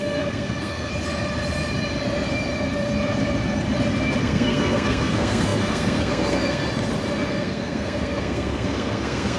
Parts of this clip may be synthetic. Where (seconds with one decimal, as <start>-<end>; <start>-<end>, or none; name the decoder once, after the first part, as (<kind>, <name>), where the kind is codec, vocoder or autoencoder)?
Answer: 0.0-0.9 (codec, SNAC); 4.2-6.6; 7.3-9.4